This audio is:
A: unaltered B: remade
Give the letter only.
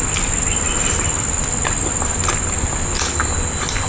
A